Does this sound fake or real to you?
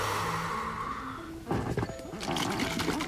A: real